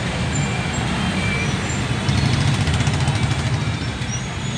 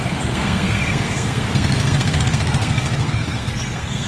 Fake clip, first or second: second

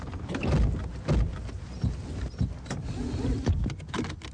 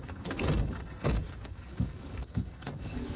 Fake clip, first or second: second